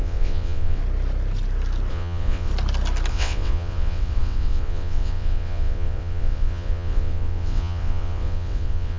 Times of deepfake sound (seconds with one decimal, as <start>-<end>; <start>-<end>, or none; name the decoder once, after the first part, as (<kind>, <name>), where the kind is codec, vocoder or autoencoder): 0.0-0.8 (vocoder, WaveNeXt); 1.9-2.5; 3.1-9.0